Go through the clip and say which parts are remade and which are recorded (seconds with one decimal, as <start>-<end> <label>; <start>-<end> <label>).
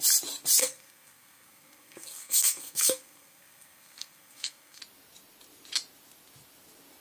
0.0-0.6 recorded; 0.6-4.8 remade; 4.8-7.0 recorded